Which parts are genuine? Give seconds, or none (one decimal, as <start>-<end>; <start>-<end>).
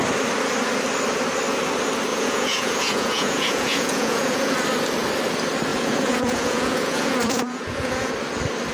0.0-2.1; 4.5-5.7; 8.1-8.7